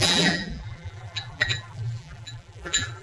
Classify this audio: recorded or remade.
remade